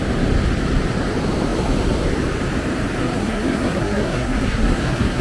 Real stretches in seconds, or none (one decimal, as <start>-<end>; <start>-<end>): 0.0-3.0